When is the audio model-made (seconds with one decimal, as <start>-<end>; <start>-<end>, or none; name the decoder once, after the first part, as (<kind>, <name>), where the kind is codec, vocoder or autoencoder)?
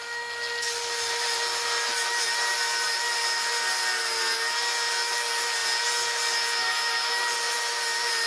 none